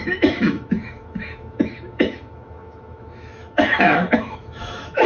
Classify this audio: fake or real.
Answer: fake